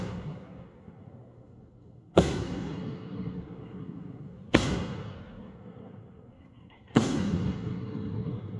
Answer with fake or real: fake